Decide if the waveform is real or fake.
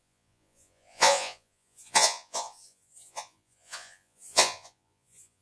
fake